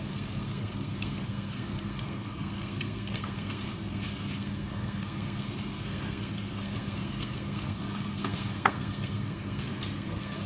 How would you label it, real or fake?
fake